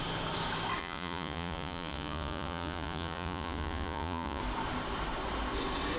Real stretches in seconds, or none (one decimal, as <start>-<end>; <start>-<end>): 0.0-0.8; 4.4-6.0